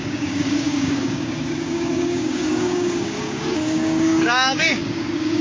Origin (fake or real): fake